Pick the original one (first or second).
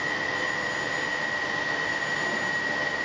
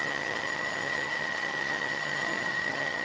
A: first